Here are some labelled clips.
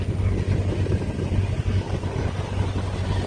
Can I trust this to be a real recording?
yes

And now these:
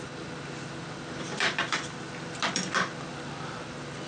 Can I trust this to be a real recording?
yes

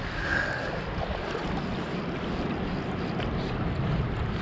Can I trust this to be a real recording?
yes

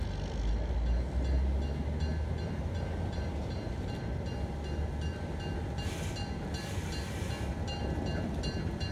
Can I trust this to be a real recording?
yes